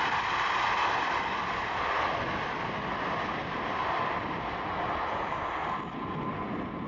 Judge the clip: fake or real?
real